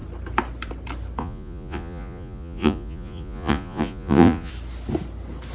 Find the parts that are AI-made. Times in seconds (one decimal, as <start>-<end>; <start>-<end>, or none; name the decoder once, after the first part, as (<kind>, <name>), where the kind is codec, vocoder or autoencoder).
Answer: 1.2-4.5 (vocoder, Vocos)

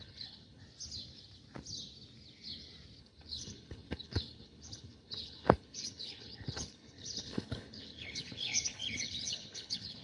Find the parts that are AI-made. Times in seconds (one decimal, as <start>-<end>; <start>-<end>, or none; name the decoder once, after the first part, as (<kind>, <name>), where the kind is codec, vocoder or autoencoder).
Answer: 0.0-0.6 (codec, HILCodec); 3.0-10.0